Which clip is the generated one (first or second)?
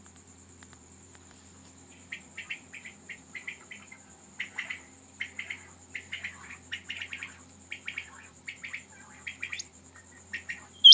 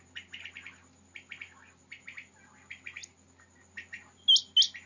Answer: first